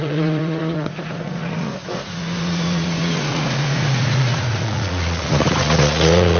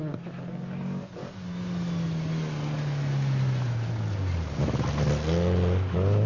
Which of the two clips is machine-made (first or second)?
first